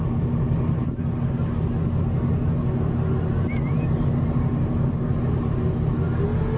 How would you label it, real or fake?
real